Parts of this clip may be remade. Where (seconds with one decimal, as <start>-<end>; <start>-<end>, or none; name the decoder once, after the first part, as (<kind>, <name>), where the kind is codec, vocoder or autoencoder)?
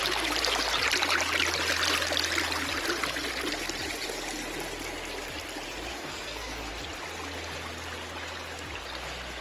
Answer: 5.9-6.7 (codec, SNAC)